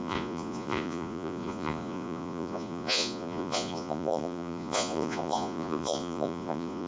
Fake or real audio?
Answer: fake